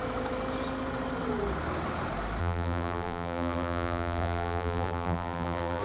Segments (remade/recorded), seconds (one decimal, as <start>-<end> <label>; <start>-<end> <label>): 0.0-2.4 recorded; 2.4-5.8 remade